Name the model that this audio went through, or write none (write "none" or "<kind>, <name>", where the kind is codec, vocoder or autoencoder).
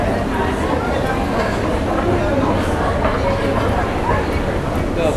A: none